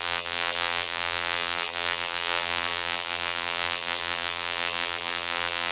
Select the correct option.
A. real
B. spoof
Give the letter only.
B